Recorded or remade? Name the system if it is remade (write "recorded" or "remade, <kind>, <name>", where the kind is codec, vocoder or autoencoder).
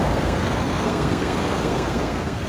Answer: remade, codec, SNAC